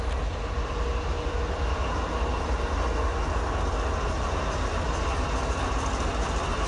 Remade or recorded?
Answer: recorded